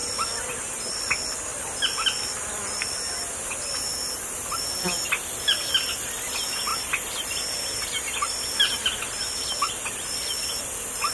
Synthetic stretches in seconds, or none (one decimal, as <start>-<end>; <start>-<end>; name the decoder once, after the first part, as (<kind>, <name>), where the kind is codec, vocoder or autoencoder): 6.7-10.6 (vocoder, BigVGAN v2)